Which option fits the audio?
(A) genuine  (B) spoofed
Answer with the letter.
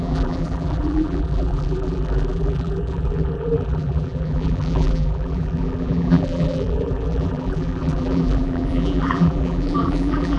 B